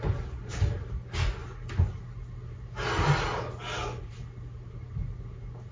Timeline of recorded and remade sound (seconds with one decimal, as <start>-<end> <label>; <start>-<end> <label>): 0.0-5.7 recorded